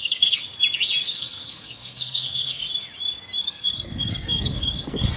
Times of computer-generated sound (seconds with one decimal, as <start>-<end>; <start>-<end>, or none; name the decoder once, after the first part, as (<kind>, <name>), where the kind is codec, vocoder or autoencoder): 0.0-0.4 (codec, SNAC); 1.0-2.6; 3.4-5.2